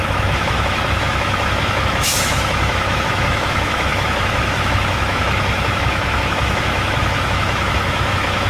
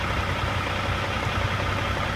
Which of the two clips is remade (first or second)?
first